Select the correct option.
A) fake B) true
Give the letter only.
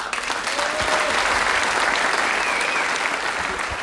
B